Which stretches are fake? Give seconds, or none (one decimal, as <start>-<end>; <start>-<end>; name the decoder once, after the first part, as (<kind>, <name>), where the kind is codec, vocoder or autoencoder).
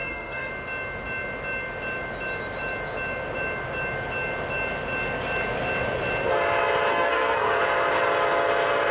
0.0-0.5 (codec, SNAC); 6.9-7.6